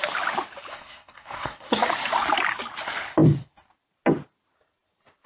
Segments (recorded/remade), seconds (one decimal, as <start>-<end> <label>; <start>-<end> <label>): 0.0-0.7 recorded; 0.7-1.9 remade; 1.9-5.3 recorded